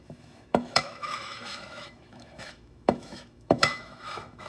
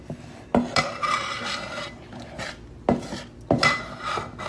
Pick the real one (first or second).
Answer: second